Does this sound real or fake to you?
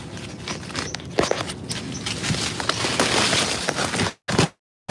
real